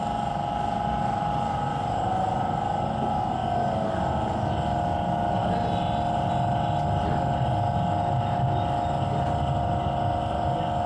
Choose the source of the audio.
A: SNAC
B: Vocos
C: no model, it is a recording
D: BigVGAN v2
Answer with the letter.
C